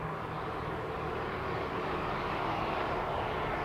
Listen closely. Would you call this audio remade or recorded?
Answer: remade